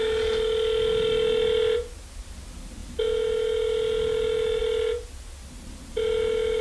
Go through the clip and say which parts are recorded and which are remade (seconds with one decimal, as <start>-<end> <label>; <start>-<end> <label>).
0.0-6.6 recorded